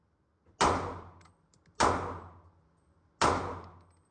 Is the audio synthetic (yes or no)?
no